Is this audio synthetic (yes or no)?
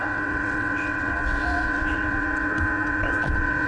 yes